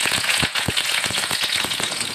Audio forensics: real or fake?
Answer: fake